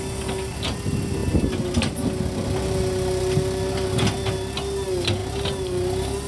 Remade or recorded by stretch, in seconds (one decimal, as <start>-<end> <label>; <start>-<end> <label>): 0.0-6.3 recorded